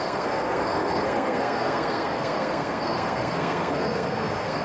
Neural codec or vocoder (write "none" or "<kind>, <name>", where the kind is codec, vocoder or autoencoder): codec, SNAC